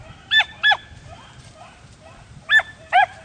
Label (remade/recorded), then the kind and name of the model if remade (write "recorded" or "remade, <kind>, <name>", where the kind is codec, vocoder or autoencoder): remade, vocoder, BigVGAN v2